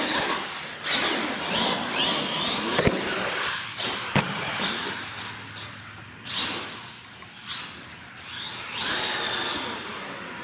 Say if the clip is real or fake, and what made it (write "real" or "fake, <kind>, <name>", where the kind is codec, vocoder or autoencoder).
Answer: real